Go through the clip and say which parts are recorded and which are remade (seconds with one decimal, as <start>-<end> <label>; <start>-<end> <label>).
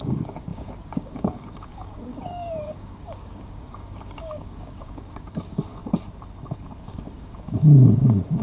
0.0-5.8 remade; 5.8-6.8 recorded; 6.8-8.4 remade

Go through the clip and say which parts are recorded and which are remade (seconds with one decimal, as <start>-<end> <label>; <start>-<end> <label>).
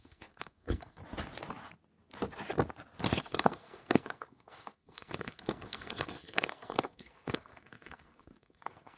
0.0-1.0 remade; 1.0-3.2 recorded; 3.2-9.0 remade